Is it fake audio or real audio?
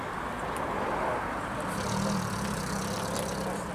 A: fake